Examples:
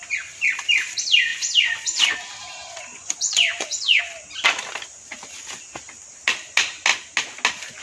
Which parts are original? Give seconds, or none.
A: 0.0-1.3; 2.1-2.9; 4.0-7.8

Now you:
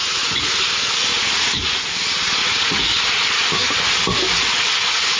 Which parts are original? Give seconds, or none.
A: 0.6-1.1; 1.9-2.4; 3.0-5.2

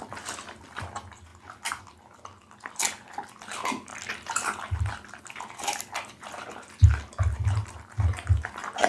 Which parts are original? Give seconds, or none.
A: 0.0-8.9

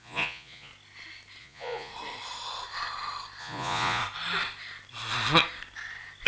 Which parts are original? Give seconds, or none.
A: 0.7-1.4; 1.9-3.4; 4.0-6.3

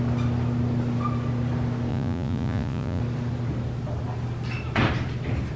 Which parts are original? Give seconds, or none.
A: 0.0-1.9; 3.0-5.6

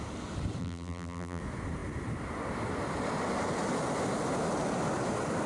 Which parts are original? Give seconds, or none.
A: 0.0-0.6; 1.4-5.5

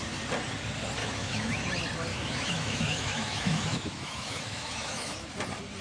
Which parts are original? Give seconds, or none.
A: 0.0-1.0; 1.7-2.1; 5.3-5.8